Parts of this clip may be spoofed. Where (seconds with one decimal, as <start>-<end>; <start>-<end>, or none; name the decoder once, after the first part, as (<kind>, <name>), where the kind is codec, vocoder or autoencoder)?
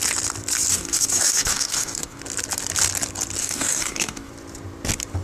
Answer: 0.7-2.2 (codec, DAC); 3.4-4.3